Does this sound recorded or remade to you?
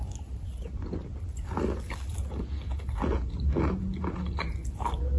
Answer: recorded